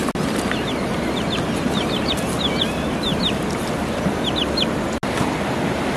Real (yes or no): yes